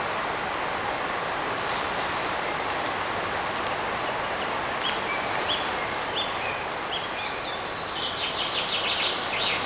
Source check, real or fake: real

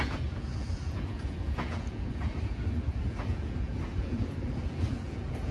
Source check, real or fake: fake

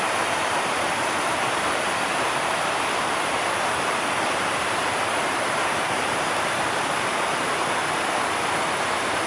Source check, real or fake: fake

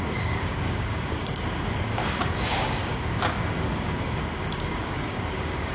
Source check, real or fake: fake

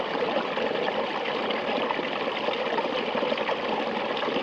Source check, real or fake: real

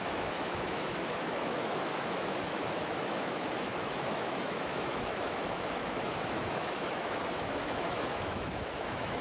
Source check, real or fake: fake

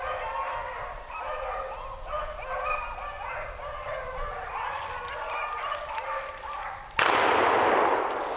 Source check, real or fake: real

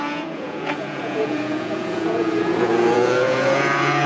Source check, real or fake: fake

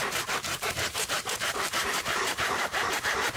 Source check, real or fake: fake